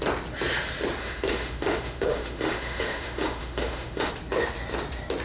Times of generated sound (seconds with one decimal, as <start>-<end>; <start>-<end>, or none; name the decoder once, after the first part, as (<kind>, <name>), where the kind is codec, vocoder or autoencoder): 1.0-4.1 (autoencoder, DAC-VAE)